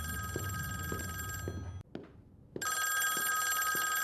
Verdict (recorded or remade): recorded